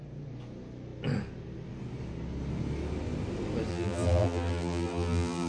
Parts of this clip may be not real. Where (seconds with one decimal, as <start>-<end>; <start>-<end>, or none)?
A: 3.7-5.5